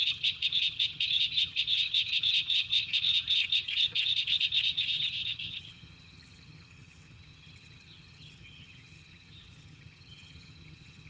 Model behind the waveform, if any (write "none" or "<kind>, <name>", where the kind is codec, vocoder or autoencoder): vocoder, HiFi-GAN